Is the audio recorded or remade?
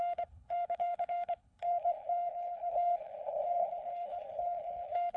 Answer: remade